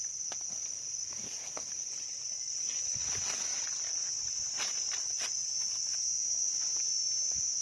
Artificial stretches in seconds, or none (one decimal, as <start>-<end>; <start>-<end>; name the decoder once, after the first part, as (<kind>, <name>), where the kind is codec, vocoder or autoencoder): none